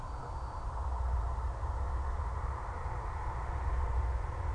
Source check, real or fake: fake